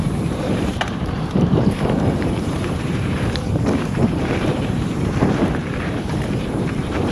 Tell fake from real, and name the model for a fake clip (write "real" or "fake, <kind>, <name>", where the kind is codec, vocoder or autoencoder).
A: fake, vocoder, BigVGAN v2